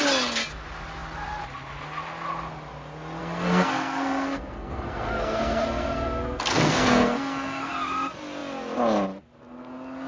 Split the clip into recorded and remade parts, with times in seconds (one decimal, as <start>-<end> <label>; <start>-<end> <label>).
0.0-3.2 recorded; 3.2-7.7 remade; 7.7-10.1 recorded